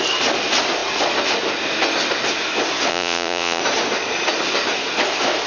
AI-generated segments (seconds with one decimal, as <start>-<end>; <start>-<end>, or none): 2.9-3.6